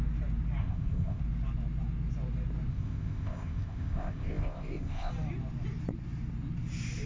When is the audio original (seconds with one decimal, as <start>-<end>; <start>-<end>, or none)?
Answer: 0.0-0.6; 1.2-2.7; 5.1-7.1